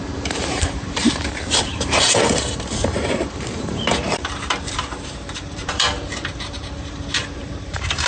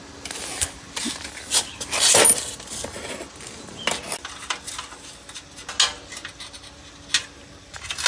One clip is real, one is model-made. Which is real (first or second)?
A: second